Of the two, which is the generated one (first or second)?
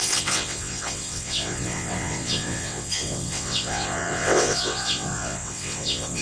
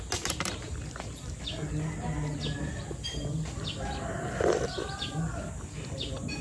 first